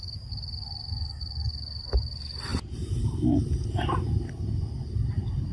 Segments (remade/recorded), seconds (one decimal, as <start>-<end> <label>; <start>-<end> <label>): 0.0-5.5 recorded